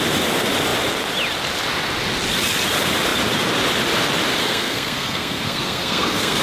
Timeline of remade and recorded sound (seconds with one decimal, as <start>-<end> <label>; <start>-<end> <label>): 0.0-4.4 recorded; 4.4-6.4 remade